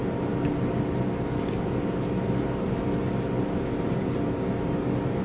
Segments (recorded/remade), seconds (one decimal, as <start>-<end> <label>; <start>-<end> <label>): 0.0-5.2 recorded